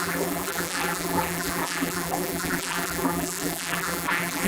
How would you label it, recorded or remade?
remade